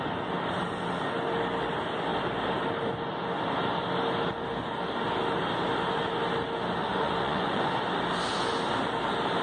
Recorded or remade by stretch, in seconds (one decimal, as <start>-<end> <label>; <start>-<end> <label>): 0.0-6.8 recorded; 6.8-7.7 remade; 7.7-9.4 recorded